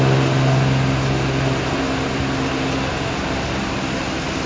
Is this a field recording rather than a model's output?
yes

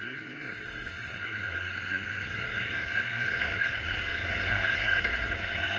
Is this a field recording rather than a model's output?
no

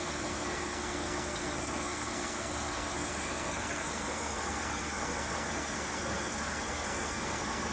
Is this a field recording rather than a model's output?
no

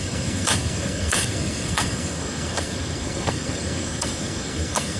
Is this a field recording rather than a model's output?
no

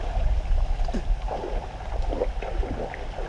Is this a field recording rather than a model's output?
yes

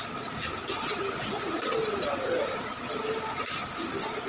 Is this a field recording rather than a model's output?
yes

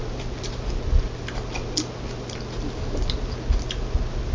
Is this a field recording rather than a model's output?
yes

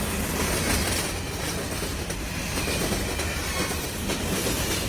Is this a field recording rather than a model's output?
yes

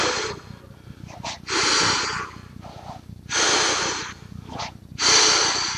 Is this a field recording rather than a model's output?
yes